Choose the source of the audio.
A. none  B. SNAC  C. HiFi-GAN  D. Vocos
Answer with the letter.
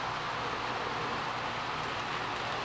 A